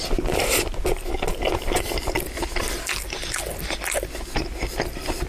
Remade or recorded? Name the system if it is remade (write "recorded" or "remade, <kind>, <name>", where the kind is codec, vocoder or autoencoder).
recorded